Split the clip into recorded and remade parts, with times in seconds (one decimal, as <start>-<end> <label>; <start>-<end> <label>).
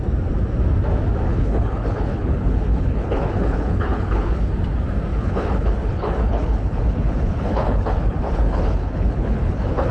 0.0-1.3 recorded; 1.3-4.5 remade; 4.5-5.1 recorded; 5.1-9.9 remade